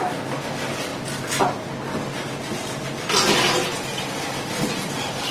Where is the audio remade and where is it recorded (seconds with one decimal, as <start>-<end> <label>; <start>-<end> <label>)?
0.0-5.3 recorded